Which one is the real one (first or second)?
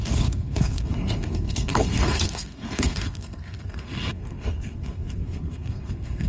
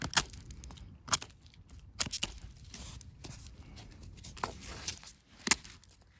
second